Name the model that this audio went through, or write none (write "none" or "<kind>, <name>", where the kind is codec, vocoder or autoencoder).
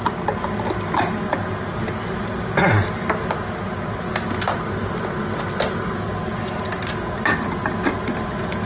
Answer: none